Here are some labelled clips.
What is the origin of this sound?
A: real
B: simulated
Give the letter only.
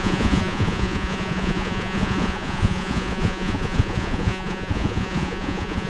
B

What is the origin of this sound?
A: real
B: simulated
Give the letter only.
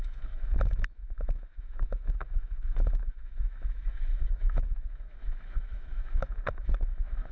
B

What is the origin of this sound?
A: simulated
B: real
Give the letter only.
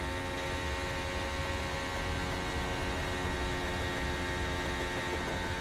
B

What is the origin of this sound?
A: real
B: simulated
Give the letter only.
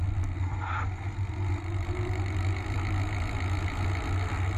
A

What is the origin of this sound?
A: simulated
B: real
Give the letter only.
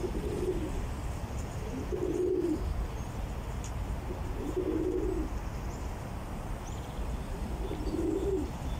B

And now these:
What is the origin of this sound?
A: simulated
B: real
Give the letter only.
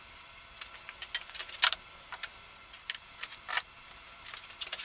B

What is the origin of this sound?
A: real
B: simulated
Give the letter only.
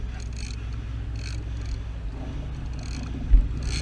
A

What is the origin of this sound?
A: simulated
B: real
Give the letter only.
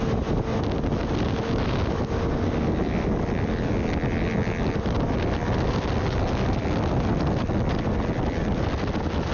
B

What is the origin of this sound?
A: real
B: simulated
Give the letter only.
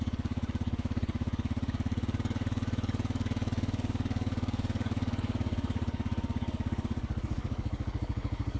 B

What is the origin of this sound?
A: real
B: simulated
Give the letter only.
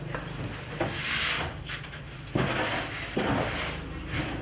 A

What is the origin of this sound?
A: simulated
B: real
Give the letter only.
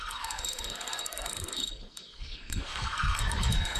A